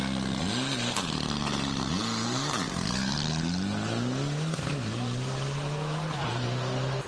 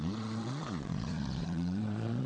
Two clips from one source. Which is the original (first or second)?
first